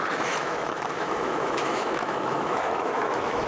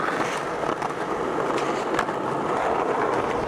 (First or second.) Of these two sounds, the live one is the second